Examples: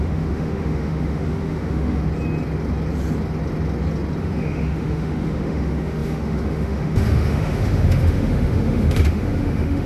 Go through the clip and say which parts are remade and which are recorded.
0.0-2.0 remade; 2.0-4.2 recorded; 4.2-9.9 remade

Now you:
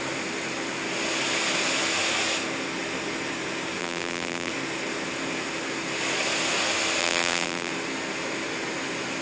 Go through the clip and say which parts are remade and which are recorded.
0.0-3.8 recorded; 3.8-4.5 remade; 4.5-7.0 recorded; 7.0-7.7 remade; 7.7-9.2 recorded

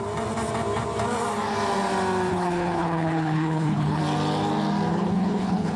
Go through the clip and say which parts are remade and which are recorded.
0.0-2.3 recorded; 2.3-4.0 remade; 4.0-4.9 recorded; 4.9-5.8 remade

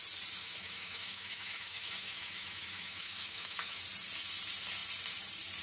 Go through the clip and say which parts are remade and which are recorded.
0.0-0.4 recorded; 0.4-3.8 remade; 3.8-5.6 recorded